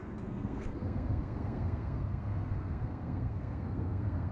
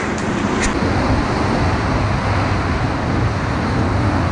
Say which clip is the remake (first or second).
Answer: first